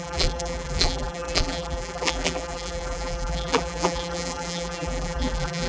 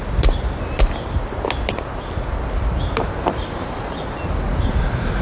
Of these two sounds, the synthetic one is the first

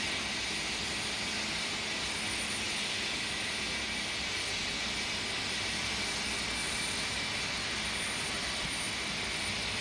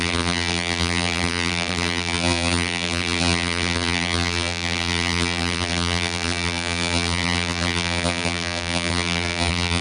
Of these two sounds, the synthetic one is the second